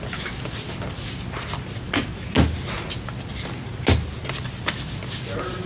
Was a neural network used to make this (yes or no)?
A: no